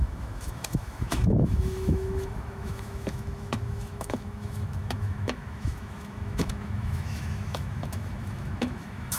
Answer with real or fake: fake